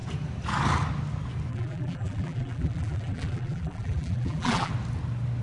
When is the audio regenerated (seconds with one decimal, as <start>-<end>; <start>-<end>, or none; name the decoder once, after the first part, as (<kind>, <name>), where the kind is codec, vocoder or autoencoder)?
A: 1.5-4.7 (vocoder, BigVGAN v2)